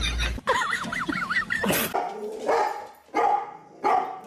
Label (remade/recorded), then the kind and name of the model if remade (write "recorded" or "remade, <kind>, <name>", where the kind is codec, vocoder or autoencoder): recorded